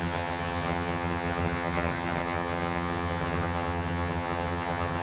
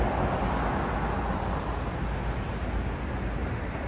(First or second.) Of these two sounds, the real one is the second